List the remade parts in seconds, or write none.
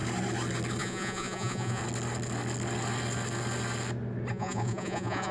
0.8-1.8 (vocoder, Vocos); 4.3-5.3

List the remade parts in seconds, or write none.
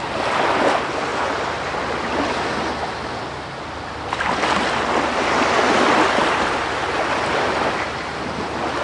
none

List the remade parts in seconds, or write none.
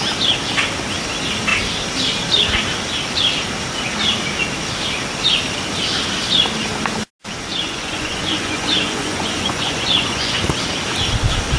7.5-10.4 (vocoder, Vocos)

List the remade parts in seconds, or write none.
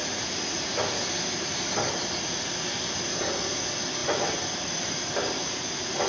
4.0-5.5 (vocoder, BigVGAN v2)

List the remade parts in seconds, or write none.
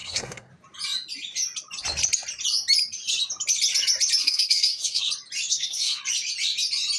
0.0-0.5 (codec, SNAC); 4.2-5.1; 5.5-6.0